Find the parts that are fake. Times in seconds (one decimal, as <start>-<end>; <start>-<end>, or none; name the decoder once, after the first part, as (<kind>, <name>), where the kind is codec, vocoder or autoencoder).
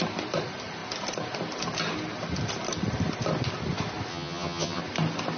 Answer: 4.1-4.8 (vocoder, HiFi-GAN)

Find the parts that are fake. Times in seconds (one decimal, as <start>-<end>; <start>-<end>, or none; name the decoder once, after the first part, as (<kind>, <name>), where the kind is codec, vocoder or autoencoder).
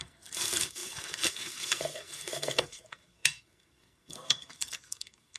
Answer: 0.0-5.4 (codec, SNAC)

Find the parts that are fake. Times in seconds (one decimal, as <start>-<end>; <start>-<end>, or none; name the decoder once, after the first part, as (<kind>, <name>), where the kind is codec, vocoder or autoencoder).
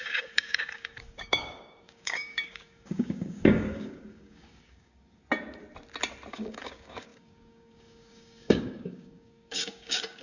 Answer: 0.0-5.2 (codec, DAC); 6.3-10.2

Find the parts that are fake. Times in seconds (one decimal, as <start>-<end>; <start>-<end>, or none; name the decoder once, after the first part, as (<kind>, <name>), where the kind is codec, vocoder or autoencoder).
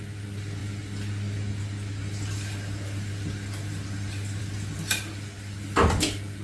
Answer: none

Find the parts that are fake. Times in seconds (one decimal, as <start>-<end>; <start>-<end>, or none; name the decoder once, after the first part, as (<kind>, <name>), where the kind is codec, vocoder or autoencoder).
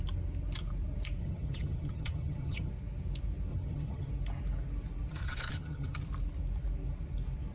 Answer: 1.2-2.7 (vocoder, HiFi-GAN); 3.5-4.1; 5.1-6.0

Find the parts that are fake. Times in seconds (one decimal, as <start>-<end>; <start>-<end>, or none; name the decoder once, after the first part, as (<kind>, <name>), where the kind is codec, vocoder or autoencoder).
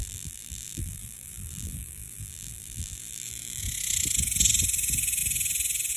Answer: 0.0-3.6 (vocoder, BigVGAN v2)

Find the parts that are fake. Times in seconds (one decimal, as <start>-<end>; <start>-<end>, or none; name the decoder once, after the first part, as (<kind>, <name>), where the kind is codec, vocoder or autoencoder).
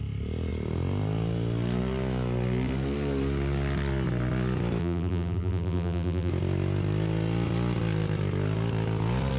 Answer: 4.8-6.3 (vocoder, BigVGAN v2)